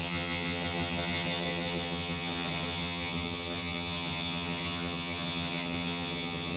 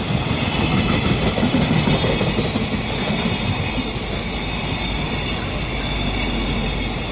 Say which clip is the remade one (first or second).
first